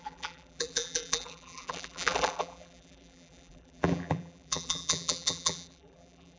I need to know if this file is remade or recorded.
remade